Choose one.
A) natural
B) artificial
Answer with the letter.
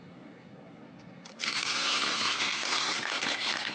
B